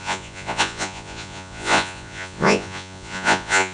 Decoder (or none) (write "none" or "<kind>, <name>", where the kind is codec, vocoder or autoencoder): vocoder, Vocos